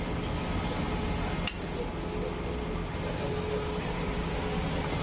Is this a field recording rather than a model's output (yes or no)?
yes